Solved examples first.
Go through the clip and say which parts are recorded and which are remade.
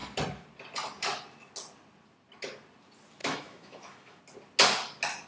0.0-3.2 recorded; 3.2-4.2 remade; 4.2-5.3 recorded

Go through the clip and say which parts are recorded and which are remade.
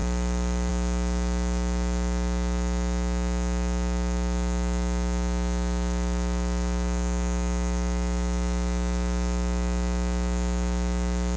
0.0-0.7 recorded; 0.7-11.4 remade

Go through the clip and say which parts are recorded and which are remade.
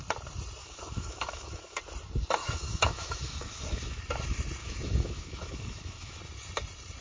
0.0-0.6 recorded; 0.6-1.8 remade; 1.8-2.4 recorded; 2.4-4.0 remade; 4.0-4.6 recorded; 4.6-6.2 remade; 6.2-7.0 recorded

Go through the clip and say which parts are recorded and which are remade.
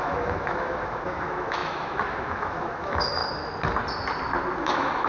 0.0-3.2 remade; 3.2-4.6 recorded; 4.6-5.1 remade